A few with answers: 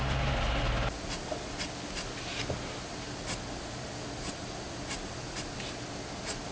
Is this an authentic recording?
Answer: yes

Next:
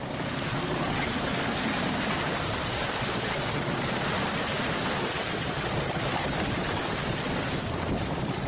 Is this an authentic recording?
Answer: no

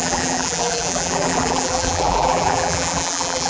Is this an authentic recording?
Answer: no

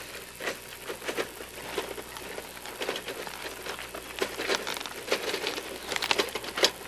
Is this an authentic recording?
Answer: yes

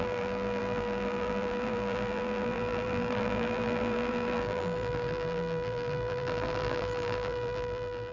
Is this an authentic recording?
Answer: no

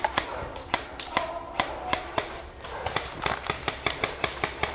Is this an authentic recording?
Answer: no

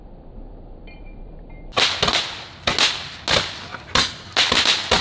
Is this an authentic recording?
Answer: yes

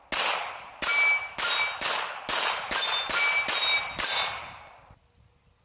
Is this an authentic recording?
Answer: yes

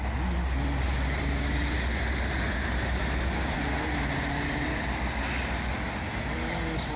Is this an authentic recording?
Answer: yes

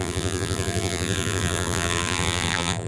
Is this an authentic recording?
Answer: no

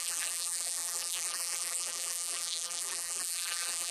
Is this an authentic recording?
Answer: no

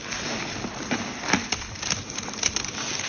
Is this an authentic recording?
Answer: no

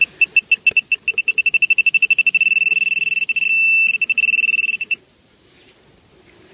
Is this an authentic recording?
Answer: yes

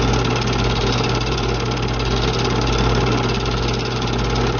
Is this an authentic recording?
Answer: no